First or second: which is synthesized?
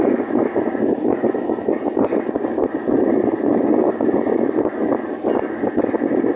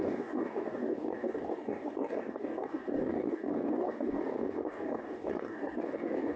second